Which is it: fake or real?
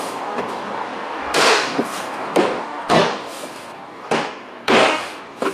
fake